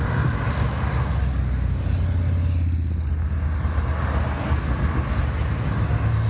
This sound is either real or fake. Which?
real